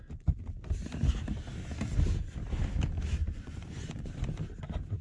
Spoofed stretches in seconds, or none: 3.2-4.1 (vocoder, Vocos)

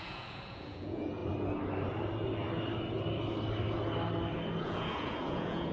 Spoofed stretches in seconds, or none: 0.0-1.2 (vocoder, Vocos); 4.6-5.7

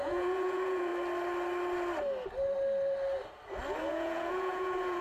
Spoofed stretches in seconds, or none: 0.0-0.9 (vocoder, Vocos); 3.9-5.0

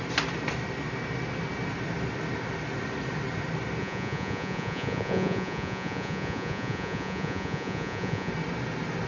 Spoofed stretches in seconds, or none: 3.8-8.3 (vocoder, Vocos)

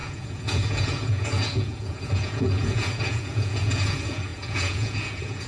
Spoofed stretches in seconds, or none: 0.0-5.5 (vocoder, Vocos)

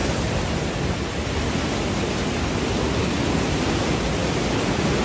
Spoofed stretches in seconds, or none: none

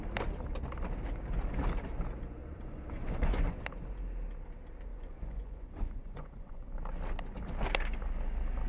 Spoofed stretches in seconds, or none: 2.4-3.7 (vocoder, Vocos); 4.9-6.7